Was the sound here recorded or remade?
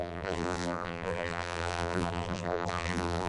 remade